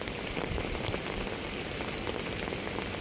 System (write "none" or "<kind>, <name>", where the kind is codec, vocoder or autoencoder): none